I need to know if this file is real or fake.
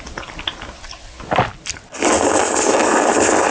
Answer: real